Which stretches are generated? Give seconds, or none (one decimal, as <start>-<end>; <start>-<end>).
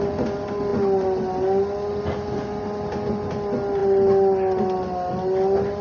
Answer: none